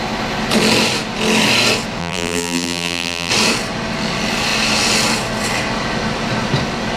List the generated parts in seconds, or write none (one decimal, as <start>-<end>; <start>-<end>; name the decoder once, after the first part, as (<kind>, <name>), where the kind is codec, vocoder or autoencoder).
2.0-3.3 (vocoder, BigVGAN v2)